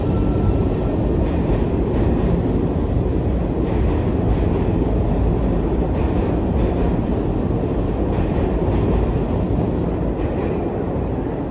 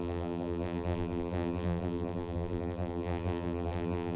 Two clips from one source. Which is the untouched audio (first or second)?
first